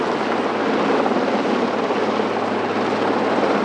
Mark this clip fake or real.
real